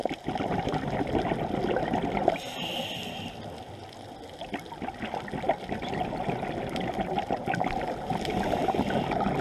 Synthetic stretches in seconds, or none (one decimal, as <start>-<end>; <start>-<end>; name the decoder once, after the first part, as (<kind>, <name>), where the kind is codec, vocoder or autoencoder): none